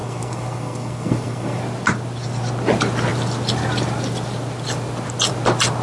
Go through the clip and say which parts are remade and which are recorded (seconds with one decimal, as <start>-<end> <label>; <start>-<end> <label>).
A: 0.0-1.6 remade; 1.6-5.8 recorded